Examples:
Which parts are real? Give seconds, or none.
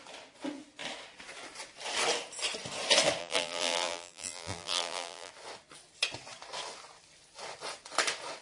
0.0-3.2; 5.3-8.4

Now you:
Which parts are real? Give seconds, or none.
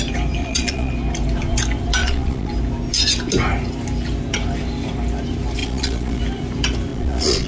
0.0-0.4; 0.9-2.0; 2.5-5.6; 6.2-6.9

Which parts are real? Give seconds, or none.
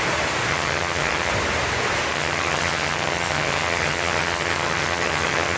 0.0-0.5; 1.3-2.1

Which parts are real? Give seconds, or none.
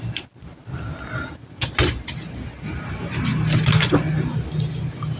0.0-5.2